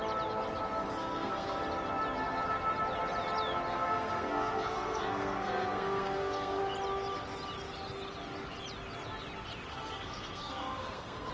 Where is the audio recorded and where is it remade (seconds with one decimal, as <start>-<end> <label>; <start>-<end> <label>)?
0.0-1.0 recorded; 1.0-1.6 remade; 1.6-3.7 recorded; 3.7-6.6 remade; 6.6-9.7 recorded; 9.7-11.3 remade